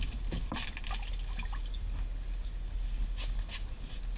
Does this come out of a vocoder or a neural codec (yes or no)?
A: no